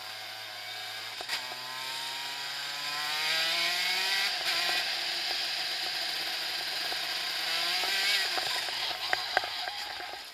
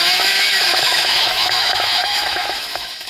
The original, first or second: first